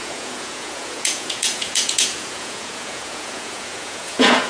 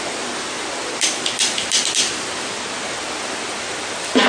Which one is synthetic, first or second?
first